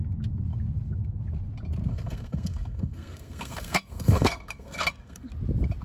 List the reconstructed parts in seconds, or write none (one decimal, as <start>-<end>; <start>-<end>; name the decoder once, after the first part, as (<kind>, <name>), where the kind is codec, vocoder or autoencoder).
1.9-5.3 (codec, SNAC)